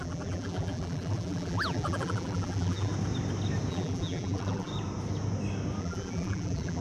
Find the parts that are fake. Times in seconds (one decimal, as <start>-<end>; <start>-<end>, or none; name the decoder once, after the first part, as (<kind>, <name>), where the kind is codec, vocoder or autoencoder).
0.0-2.9 (vocoder, BigVGAN v2); 3.7-4.7; 5.8-6.8